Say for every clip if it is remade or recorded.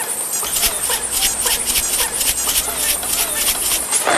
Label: recorded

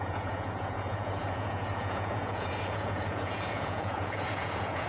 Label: remade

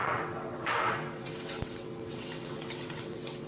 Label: remade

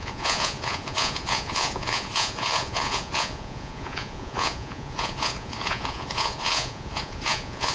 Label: remade